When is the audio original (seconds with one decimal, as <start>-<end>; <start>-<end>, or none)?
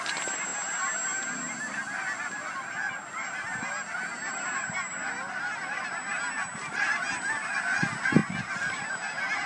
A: 0.0-9.5